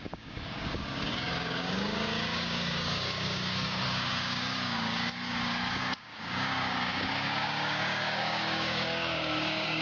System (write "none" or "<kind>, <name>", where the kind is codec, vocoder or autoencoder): codec, DAC